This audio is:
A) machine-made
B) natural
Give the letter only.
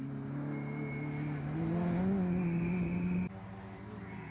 B